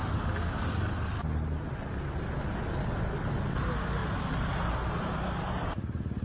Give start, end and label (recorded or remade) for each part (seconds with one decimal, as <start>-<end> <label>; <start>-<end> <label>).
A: 0.0-6.2 recorded